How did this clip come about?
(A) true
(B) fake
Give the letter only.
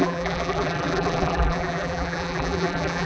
B